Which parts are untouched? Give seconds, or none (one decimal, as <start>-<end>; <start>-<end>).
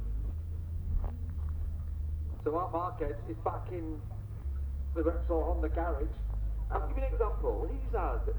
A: 0.0-0.6; 2.0-4.4; 7.7-8.4